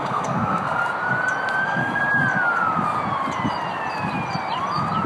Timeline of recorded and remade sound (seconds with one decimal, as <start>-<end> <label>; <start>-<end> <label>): 0.0-0.8 remade; 0.8-1.6 recorded; 1.6-2.0 remade; 2.0-5.1 recorded